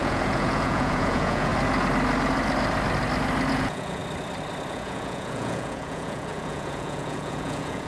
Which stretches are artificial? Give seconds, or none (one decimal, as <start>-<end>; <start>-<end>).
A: 0.0-1.5; 3.5-4.0; 4.7-7.9